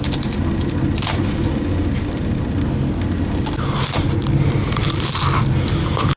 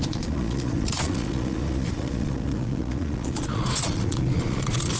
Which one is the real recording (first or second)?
first